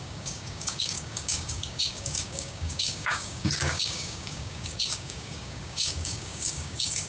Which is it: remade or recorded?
remade